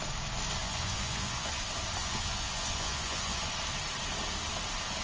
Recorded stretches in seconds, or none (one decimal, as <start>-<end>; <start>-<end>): 0.0-0.6; 1.5-2.0; 3.5-5.0